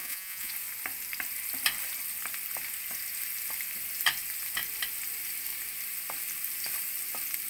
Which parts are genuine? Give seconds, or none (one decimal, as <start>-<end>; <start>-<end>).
0.5-7.5